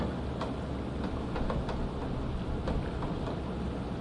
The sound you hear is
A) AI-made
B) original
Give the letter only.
B